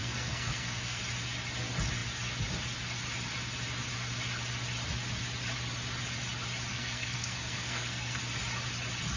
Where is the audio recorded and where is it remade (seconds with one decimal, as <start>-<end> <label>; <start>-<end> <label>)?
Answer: 0.0-1.0 remade; 1.0-6.7 recorded; 6.7-8.2 remade; 8.2-9.2 recorded